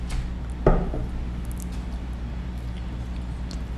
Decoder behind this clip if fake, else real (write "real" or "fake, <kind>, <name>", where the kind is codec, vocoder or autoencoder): real